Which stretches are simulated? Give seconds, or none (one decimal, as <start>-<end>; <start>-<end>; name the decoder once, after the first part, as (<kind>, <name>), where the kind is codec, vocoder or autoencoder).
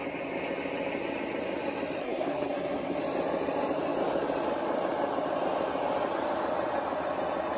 2.0-3.0 (codec, SNAC)